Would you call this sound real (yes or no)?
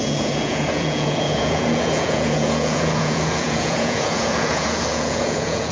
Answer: no